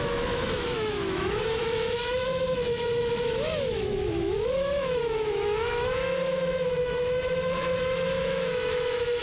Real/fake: fake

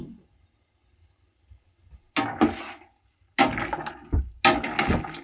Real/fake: real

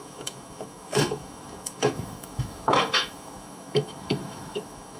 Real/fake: fake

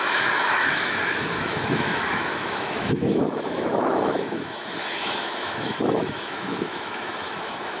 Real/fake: fake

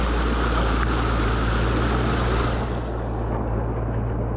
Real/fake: real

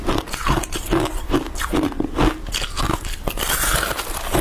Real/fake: real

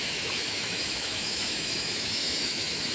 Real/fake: fake